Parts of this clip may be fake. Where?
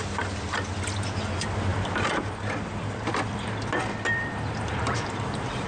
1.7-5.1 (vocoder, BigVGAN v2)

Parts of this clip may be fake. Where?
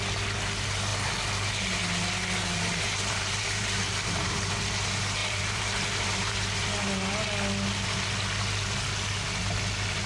2.5-4.5 (vocoder, BigVGAN v2); 5.2-6.6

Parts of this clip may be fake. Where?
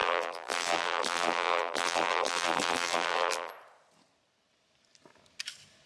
0.0-3.5 (vocoder, BigVGAN v2)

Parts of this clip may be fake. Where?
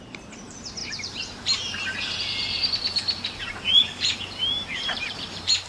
0.0-2.6 (vocoder, BigVGAN v2); 3.8-5.7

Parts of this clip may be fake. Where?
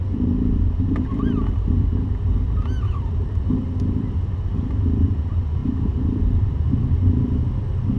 0.0-3.6 (vocoder, BigVGAN v2); 5.6-6.9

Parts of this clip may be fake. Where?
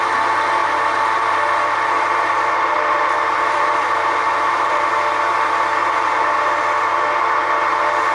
0.6-4.9 (vocoder, BigVGAN v2); 5.8-6.6